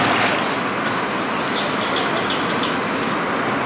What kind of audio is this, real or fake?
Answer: real